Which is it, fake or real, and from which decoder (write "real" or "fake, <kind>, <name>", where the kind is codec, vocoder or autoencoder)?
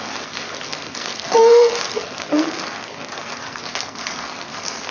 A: fake, codec, SNAC